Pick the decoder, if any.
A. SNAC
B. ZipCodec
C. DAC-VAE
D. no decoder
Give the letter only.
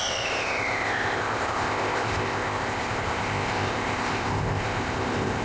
B